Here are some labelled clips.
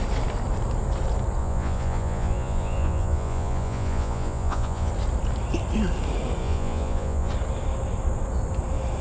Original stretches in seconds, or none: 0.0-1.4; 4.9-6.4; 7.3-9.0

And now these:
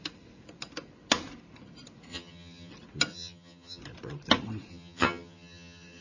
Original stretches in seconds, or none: 0.0-2.1; 2.7-3.1; 3.8-4.7

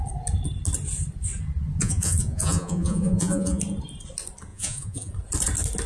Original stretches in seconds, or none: 0.0-1.8; 3.6-4.5; 5.1-5.9

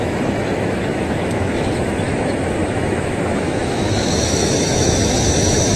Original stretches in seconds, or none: none

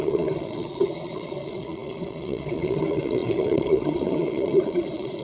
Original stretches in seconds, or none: none